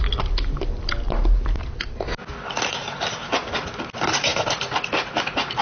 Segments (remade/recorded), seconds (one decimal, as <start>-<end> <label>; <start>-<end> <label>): 0.0-5.6 recorded